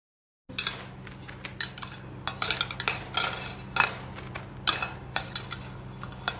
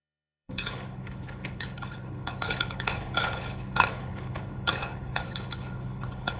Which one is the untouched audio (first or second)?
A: first